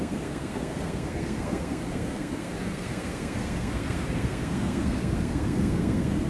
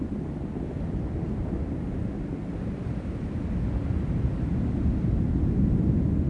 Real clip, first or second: second